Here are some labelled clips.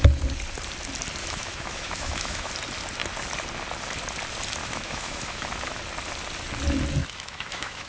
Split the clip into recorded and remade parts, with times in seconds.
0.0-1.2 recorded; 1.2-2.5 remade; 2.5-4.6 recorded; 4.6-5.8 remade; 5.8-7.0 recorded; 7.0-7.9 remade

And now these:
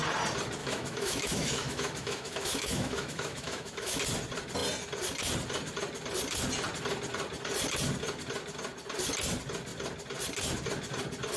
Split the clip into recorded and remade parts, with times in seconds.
0.0-0.6 recorded; 0.6-4.0 remade; 4.0-11.4 recorded

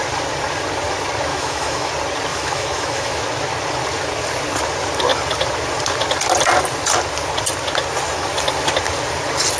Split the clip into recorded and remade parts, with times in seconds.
0.0-1.3 recorded; 1.3-1.9 remade; 1.9-2.3 recorded; 2.3-3.2 remade; 3.2-9.6 recorded

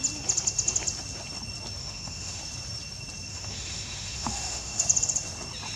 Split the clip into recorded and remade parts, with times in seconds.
0.0-1.8 recorded; 1.8-2.4 remade; 2.4-3.3 recorded; 3.3-4.8 remade; 4.8-5.8 recorded

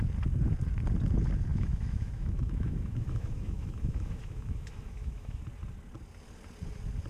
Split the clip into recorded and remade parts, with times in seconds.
0.0-1.5 recorded; 1.5-5.4 remade; 5.4-7.1 recorded